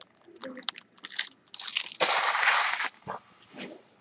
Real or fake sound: real